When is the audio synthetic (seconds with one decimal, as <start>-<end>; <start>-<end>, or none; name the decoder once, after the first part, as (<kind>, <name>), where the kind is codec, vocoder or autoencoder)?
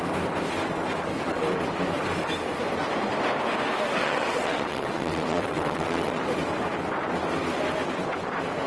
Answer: 4.0-6.2 (vocoder, WaveNeXt)